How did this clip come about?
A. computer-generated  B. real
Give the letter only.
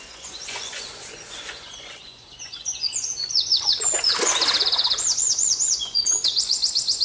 A